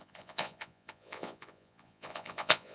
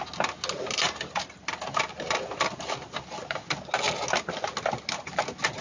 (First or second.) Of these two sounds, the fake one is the first